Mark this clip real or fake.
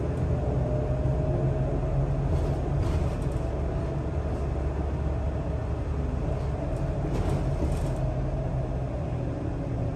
real